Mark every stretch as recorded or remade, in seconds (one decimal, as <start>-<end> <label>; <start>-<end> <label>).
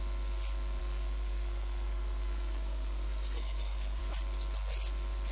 0.0-0.8 recorded; 0.8-4.0 remade; 4.0-5.3 recorded